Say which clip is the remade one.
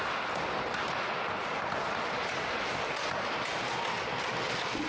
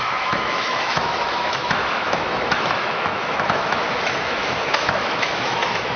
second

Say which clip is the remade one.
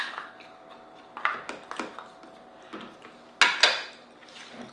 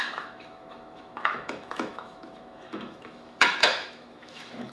second